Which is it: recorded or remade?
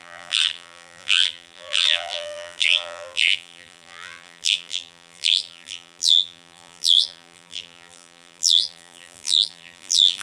remade